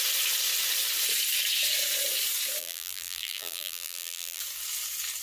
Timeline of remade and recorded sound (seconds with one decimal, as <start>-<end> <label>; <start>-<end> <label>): 0.0-2.6 recorded; 2.6-4.4 remade; 4.4-5.2 recorded